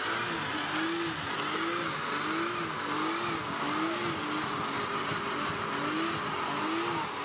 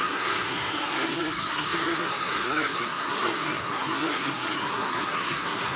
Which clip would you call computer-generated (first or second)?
second